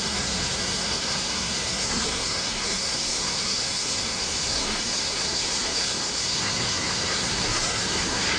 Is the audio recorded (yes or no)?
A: no